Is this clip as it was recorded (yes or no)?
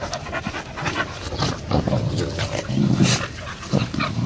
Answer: yes